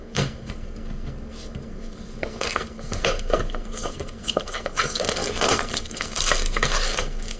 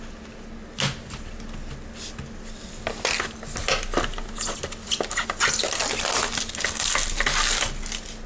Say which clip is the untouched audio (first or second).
second